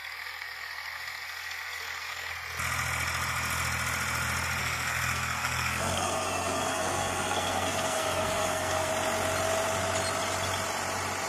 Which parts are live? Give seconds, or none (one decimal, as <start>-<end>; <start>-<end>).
2.3-4.6; 8.9-11.3